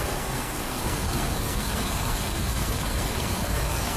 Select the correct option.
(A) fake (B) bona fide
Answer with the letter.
A